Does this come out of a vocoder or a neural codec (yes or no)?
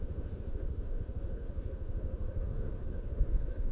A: yes